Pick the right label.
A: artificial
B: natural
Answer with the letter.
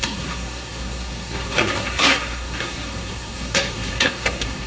A